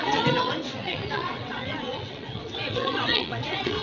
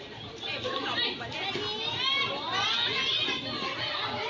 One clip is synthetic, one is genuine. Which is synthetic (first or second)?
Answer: first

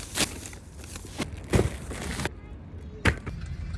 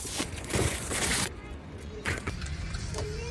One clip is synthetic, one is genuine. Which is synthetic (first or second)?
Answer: second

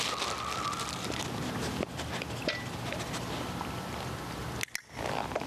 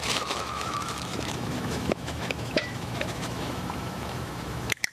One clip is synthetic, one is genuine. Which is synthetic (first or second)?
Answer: second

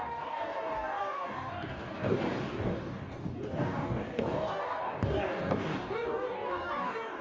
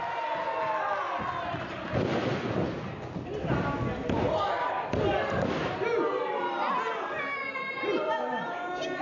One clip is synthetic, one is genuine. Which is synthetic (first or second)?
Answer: first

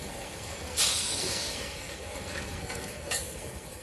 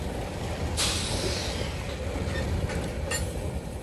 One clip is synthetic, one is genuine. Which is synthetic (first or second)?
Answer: first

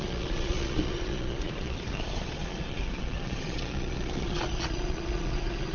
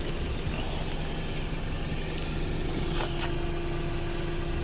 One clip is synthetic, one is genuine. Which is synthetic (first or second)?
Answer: first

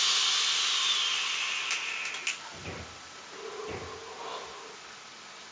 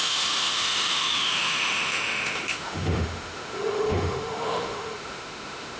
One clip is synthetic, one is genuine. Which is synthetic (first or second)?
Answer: second